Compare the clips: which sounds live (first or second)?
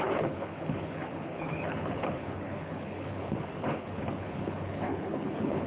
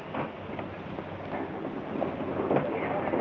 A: second